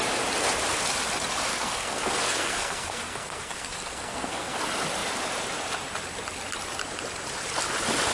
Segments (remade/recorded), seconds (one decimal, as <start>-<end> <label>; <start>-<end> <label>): 0.0-1.5 recorded; 1.5-4.6 remade; 4.6-8.1 recorded